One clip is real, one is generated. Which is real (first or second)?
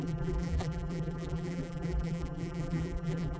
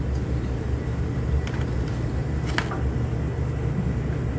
second